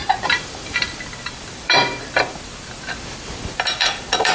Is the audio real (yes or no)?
no